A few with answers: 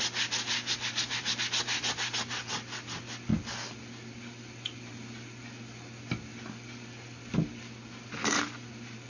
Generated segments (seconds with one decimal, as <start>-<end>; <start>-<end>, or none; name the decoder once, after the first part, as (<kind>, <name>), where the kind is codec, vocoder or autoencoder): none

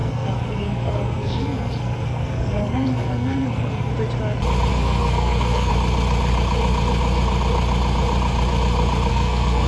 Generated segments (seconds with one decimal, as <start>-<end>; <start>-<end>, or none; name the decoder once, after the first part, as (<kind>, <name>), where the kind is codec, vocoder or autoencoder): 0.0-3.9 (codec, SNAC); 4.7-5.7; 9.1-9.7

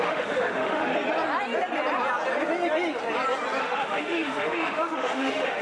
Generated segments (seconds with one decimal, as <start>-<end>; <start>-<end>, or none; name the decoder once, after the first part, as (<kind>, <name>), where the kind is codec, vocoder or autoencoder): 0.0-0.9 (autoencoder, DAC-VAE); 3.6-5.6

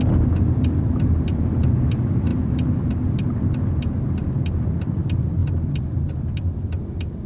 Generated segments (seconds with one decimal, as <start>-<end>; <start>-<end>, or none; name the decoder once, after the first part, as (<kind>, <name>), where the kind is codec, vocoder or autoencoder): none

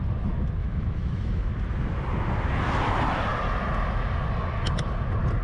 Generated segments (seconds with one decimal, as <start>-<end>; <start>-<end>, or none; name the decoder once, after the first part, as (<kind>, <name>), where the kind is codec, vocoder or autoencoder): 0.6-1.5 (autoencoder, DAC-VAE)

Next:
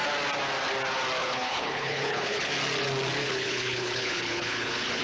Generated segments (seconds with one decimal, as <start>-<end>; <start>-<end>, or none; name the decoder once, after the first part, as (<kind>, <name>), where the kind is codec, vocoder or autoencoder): 1.2-2.5 (codec, HILCodec); 3.2-5.0